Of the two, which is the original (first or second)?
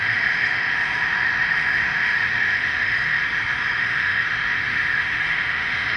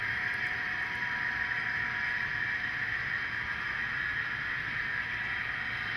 second